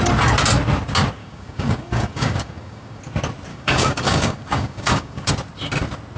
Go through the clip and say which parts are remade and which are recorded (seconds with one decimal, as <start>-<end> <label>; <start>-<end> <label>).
0.0-1.2 recorded; 1.2-3.0 remade; 3.0-3.5 recorded; 3.5-5.3 remade; 5.3-6.2 recorded